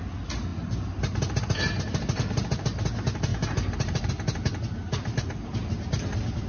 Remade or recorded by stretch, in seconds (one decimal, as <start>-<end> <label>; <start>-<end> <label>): 0.0-3.3 recorded; 3.3-4.1 remade; 4.1-6.5 recorded